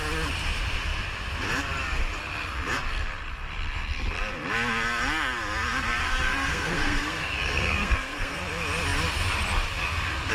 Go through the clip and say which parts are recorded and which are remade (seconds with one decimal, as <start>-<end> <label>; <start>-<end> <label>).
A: 0.0-6.0 recorded; 6.0-8.4 remade; 8.4-10.3 recorded